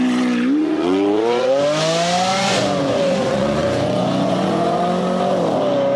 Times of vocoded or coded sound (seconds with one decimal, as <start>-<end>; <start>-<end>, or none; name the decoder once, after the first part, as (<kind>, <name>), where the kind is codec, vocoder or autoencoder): 0.6-1.6 (vocoder, Vocos); 2.3-5.2